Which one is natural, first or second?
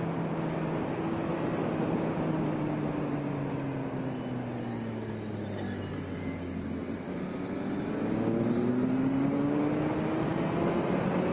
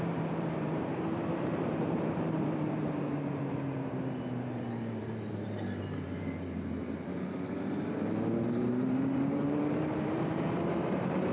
first